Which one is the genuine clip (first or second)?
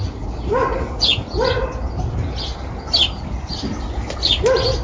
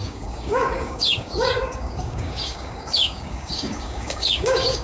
first